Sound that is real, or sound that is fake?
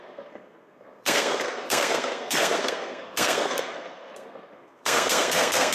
fake